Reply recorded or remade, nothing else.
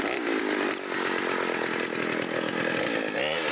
recorded